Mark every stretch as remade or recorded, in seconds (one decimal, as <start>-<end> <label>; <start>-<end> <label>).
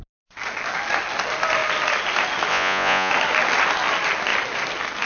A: 0.0-2.5 recorded; 2.5-3.1 remade; 3.1-5.1 recorded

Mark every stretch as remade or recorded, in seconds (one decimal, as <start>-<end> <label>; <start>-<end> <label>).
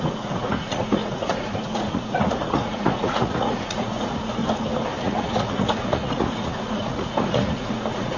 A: 0.0-4.4 remade; 4.4-5.0 recorded; 5.0-8.2 remade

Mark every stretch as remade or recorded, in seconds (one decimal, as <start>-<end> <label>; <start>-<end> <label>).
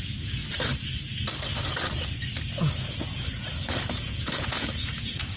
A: 0.0-0.4 remade; 0.4-3.1 recorded; 3.1-5.4 remade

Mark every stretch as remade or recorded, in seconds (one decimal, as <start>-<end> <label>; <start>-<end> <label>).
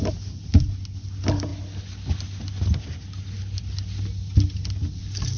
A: 0.0-5.4 recorded